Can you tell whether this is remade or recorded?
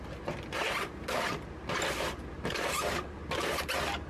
recorded